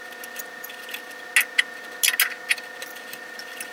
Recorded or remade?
recorded